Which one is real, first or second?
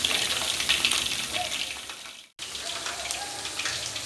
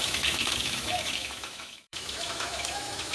first